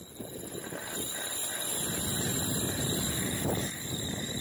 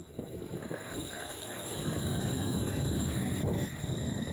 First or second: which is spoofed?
second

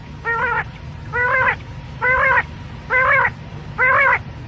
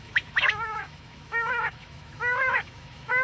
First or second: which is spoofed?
second